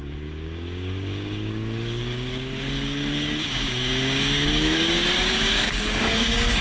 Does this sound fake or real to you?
fake